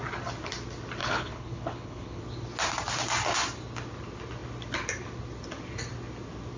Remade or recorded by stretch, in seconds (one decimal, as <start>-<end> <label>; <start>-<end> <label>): 0.0-1.0 recorded; 1.0-2.2 remade; 2.2-6.6 recorded